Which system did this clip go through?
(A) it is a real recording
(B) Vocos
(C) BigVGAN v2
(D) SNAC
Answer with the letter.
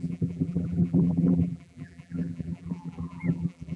C